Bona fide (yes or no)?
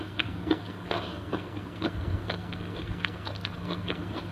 no